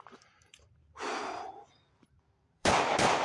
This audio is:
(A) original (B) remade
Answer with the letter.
B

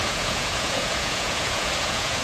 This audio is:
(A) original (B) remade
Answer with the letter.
B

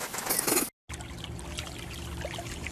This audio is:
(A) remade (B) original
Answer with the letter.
B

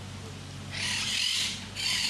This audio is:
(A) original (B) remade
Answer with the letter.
A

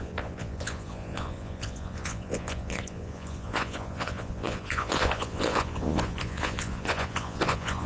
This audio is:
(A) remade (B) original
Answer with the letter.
A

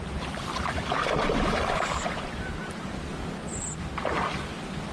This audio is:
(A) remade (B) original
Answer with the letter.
A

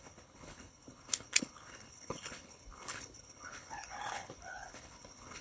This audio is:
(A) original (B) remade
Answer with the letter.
B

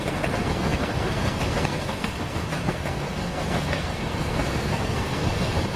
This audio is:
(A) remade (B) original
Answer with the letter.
A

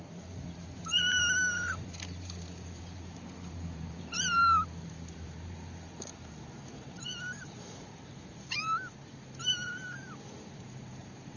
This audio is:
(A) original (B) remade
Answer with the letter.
B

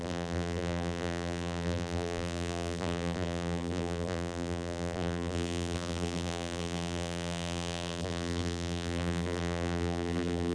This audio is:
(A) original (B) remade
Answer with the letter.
B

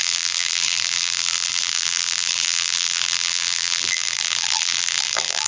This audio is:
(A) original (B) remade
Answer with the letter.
B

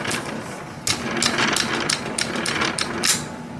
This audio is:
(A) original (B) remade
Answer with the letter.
A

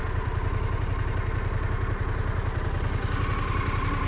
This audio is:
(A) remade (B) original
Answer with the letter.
B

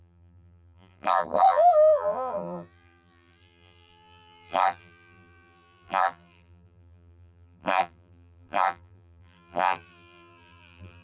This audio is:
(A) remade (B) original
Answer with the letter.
A